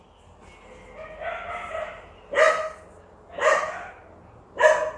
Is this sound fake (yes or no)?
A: no